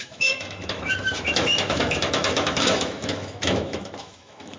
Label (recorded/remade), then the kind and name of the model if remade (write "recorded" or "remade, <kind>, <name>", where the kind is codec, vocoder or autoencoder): remade, autoencoder, DAC-VAE